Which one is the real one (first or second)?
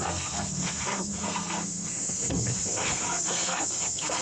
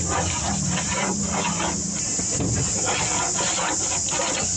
second